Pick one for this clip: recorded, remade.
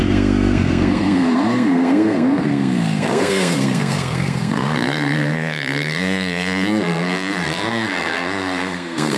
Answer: remade